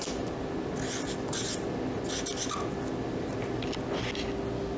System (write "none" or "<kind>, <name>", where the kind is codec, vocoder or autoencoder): none